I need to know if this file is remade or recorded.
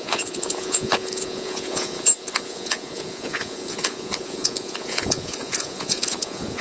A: remade